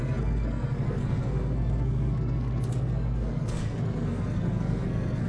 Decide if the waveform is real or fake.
fake